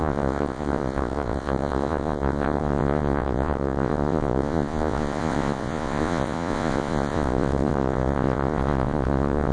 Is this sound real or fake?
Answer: fake